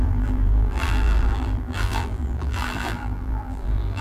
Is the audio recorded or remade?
remade